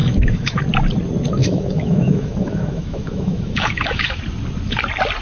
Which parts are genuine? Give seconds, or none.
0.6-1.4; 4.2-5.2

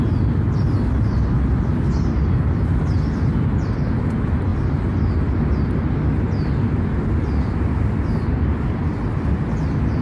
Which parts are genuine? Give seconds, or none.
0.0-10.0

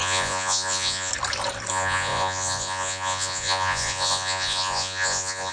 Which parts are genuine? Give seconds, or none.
1.1-1.7

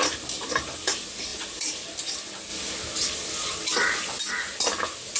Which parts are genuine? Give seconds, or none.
0.0-1.3; 1.9-5.2

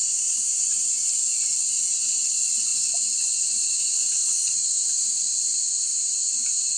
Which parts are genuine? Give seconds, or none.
0.8-5.9

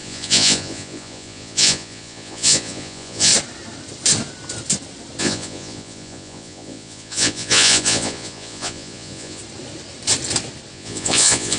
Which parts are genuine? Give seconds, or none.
3.3-5.2; 9.4-10.7

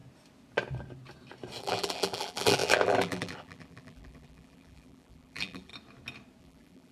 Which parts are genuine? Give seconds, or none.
0.0-1.6; 5.7-6.4

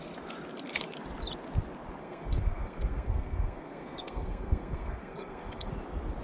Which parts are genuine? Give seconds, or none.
0.0-2.0; 5.7-6.2